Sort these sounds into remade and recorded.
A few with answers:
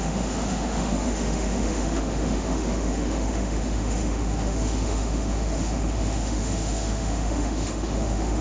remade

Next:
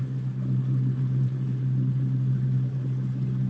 recorded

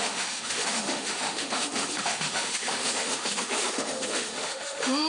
remade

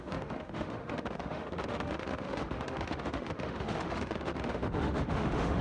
remade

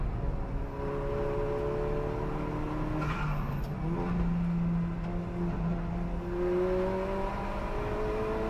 recorded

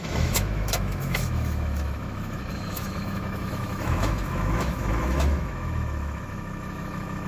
remade